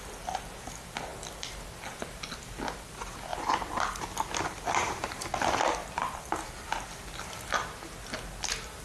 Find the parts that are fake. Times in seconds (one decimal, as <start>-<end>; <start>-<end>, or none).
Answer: 4.8-5.3; 5.8-6.5